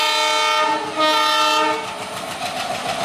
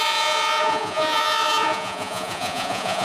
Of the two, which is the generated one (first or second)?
second